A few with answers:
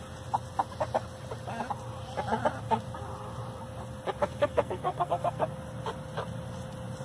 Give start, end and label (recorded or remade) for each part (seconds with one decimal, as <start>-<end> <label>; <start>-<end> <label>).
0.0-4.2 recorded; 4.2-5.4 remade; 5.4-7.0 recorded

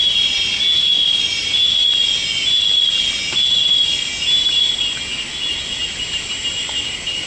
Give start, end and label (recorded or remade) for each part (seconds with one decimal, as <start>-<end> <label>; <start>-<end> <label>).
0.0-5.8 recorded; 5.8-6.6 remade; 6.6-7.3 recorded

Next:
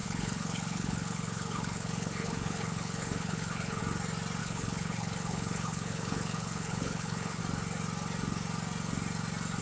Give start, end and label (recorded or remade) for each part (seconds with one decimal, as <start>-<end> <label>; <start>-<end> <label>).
0.0-3.8 remade; 3.8-4.4 recorded; 4.4-7.4 remade; 7.4-9.6 recorded

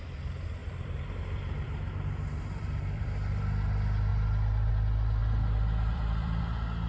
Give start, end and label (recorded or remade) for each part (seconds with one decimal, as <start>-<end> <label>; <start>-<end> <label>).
0.0-0.6 recorded; 0.6-3.4 remade; 3.4-4.1 recorded; 4.1-4.7 remade; 4.7-5.2 recorded; 5.2-6.4 remade; 6.4-6.9 recorded